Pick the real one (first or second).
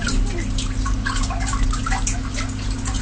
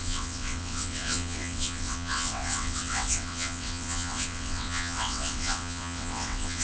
first